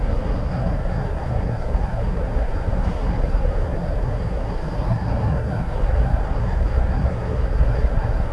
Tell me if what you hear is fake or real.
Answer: fake